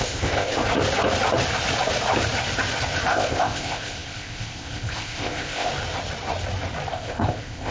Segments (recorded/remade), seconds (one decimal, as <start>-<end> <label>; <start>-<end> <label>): 0.0-0.6 remade; 0.6-3.1 recorded; 3.1-5.7 remade; 5.7-6.9 recorded; 6.9-7.7 remade